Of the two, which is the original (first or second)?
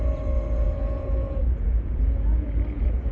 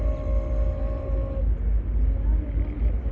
second